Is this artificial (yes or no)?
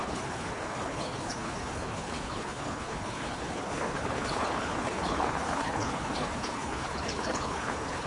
yes